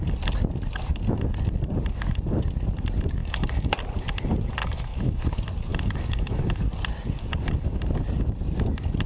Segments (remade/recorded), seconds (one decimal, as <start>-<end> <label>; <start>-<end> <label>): 0.0-3.2 recorded; 3.2-3.7 remade; 3.7-4.6 recorded; 4.6-5.2 remade; 5.2-5.7 recorded; 5.7-6.6 remade; 6.6-9.1 recorded